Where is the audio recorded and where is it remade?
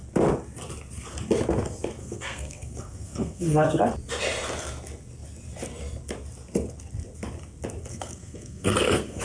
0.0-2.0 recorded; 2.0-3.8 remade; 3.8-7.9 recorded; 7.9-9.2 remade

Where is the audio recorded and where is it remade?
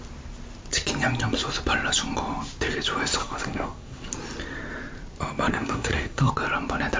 0.0-3.2 recorded; 3.2-4.1 remade; 4.1-5.5 recorded; 5.5-6.3 remade; 6.3-7.0 recorded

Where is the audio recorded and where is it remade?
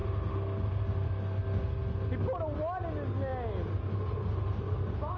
0.0-5.2 recorded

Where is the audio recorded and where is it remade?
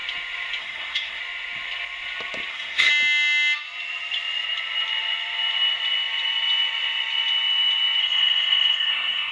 0.0-0.6 recorded; 0.6-1.2 remade; 1.2-2.5 recorded; 2.5-2.9 remade; 2.9-8.0 recorded; 8.0-9.3 remade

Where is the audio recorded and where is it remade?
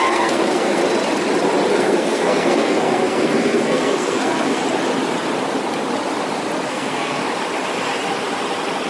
0.0-0.8 remade; 0.8-1.7 recorded; 1.7-4.6 remade; 4.6-6.7 recorded; 6.7-7.2 remade; 7.2-8.9 recorded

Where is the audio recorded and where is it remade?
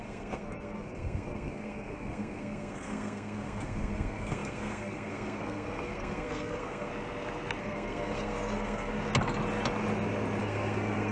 0.0-6.9 remade; 6.9-7.6 recorded; 7.6-8.9 remade; 8.9-10.4 recorded; 10.4-11.1 remade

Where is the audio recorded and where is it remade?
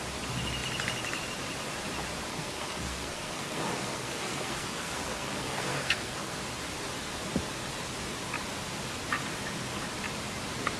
0.0-2.3 recorded; 2.3-6.4 remade; 6.4-10.8 recorded